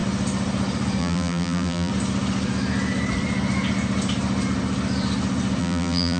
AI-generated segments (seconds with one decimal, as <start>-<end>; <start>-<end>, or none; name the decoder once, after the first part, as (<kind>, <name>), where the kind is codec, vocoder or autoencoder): 1.0-1.9 (vocoder, BigVGAN v2); 5.6-6.2